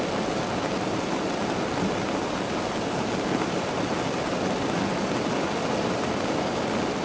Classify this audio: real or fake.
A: real